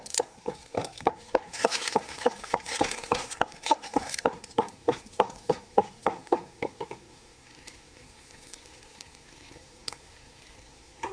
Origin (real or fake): fake